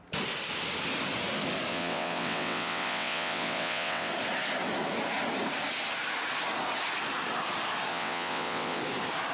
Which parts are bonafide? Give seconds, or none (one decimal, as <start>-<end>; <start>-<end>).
0.0-1.7; 4.1-7.9; 8.8-9.3